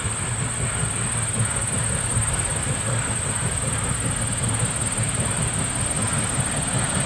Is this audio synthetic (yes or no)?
no